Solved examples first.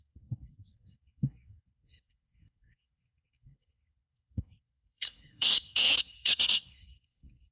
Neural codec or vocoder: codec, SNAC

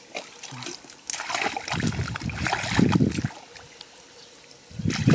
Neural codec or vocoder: none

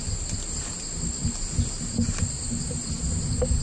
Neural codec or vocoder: none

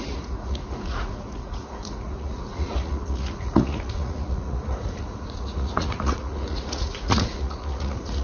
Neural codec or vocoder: vocoder, Vocos